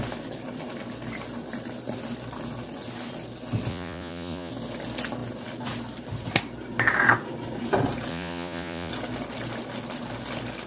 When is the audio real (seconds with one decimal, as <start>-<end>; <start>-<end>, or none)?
0.0-3.7; 4.5-8.1; 8.9-10.7

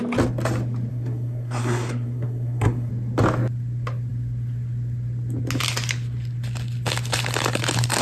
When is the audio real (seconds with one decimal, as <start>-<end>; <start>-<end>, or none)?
0.0-0.9; 2.9-8.0

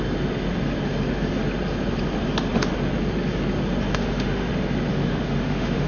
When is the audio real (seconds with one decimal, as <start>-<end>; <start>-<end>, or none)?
0.0-3.9; 4.5-4.9

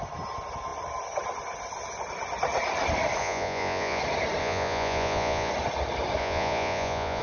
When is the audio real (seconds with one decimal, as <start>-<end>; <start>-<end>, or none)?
0.0-3.2; 4.0-4.4; 5.5-6.2

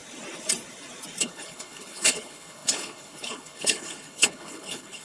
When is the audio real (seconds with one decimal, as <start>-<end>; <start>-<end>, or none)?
0.0-1.2

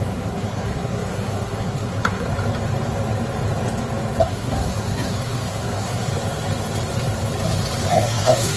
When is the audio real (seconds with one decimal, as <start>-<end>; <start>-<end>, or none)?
2.3-4.2; 6.1-7.9